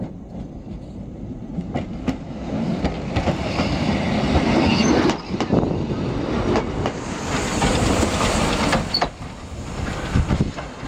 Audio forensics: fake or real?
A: real